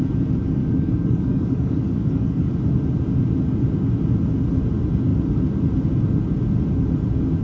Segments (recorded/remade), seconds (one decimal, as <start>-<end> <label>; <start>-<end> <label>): 0.0-0.6 recorded; 0.6-2.5 remade; 2.5-7.4 recorded